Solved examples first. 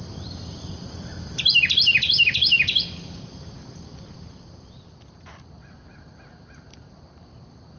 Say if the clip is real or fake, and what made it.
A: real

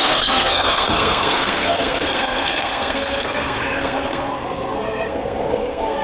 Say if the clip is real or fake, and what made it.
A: fake, codec, SNAC